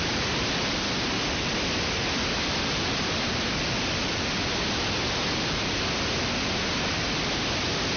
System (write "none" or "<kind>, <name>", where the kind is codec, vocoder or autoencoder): none